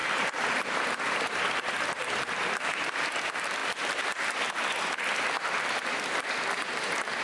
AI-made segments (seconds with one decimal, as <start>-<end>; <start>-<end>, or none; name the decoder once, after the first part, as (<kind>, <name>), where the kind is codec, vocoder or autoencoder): 0.0-2.2 (vocoder, BigVGAN v2)